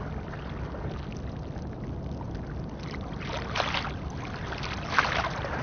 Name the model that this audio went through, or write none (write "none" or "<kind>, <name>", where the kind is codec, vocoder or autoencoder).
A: none